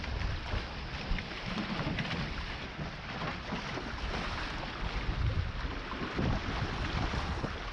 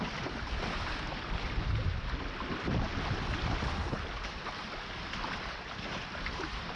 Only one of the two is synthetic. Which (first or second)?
second